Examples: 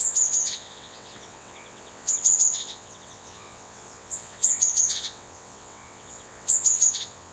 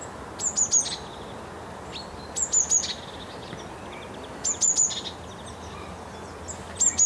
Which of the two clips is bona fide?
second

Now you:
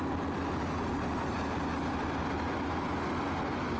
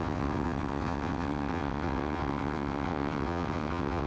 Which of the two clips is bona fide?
first